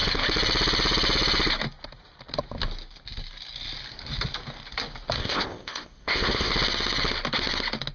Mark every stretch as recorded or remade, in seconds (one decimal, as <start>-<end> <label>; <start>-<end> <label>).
0.0-5.2 recorded; 5.2-6.5 remade; 6.5-7.9 recorded